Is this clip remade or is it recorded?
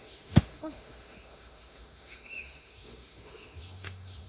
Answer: remade